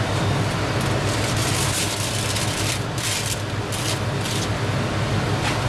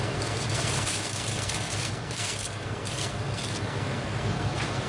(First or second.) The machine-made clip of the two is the second